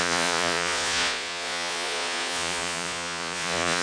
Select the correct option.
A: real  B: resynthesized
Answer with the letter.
B